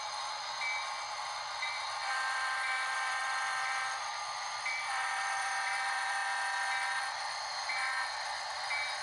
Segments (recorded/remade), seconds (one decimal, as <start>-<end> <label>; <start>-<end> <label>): 0.0-6.2 remade; 6.2-7.0 recorded; 7.0-9.0 remade